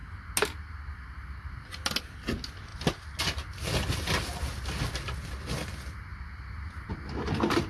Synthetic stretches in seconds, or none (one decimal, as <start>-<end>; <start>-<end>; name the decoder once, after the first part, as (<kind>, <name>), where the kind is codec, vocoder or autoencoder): none